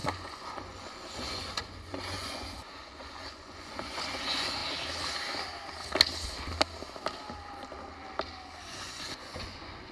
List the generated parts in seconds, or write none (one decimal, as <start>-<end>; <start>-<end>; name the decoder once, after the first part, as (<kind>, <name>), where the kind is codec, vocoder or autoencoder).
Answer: 0.0-4.6 (vocoder, Vocos); 8.6-9.9